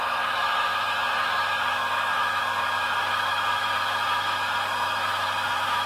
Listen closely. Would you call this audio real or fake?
fake